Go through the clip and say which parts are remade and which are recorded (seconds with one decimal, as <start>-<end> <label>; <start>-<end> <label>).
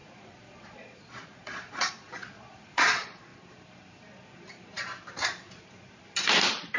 0.0-3.3 remade; 3.3-6.8 recorded